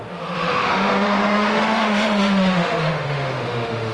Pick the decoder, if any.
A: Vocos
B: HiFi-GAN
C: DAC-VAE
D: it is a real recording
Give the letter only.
C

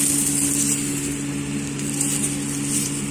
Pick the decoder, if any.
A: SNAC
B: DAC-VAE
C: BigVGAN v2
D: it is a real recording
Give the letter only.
D